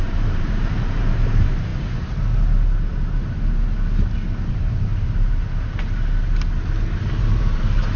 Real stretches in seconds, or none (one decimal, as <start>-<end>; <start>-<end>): 1.7-4.5; 4.9-7.1

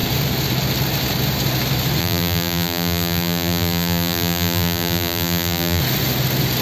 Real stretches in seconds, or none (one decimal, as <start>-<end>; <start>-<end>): 0.0-2.0; 5.8-6.6